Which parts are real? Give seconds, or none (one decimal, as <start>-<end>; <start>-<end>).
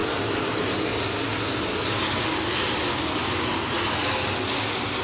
0.0-5.0